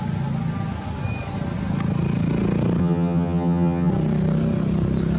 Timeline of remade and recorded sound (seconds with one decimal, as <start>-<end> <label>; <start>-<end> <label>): 0.0-2.8 recorded; 2.8-3.9 remade; 3.9-5.2 recorded